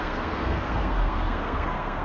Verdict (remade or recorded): remade